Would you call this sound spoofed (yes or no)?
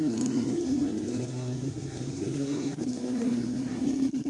yes